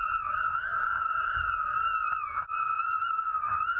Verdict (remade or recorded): recorded